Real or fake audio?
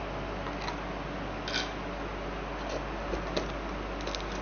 real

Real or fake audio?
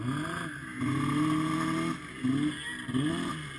real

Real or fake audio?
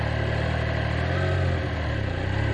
real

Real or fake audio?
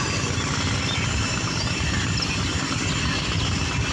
real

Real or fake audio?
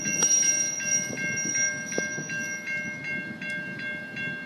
real